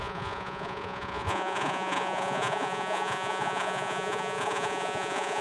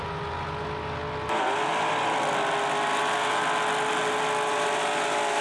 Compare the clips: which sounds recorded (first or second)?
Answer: second